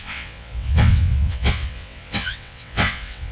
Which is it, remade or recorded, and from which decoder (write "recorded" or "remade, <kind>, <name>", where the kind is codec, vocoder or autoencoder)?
remade, vocoder, WaveNeXt